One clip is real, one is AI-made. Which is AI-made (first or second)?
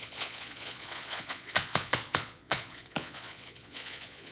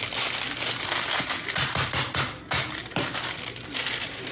first